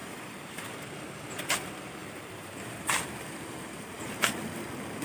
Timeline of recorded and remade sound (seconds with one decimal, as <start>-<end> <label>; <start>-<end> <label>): 0.0-0.9 remade; 0.9-2.0 recorded; 2.0-4.3 remade; 4.3-5.0 recorded